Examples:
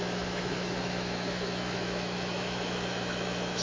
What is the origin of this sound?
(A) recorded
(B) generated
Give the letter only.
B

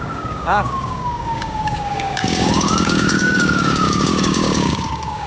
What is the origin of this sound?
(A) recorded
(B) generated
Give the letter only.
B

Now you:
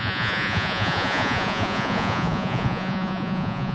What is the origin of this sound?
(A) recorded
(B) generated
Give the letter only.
B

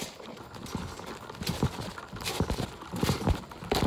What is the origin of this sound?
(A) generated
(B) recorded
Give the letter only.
B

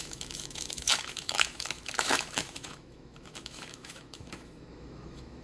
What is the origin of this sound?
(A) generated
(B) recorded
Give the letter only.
A